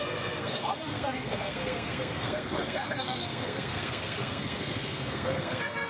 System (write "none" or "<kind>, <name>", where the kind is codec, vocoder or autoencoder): codec, SNAC